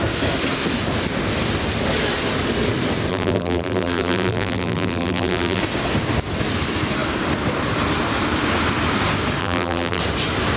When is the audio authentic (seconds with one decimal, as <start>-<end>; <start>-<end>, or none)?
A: 0.0-3.1; 5.6-9.4; 10.0-10.6